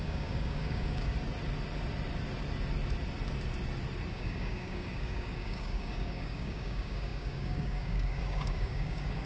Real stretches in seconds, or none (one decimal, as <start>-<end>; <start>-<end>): 1.1-4.1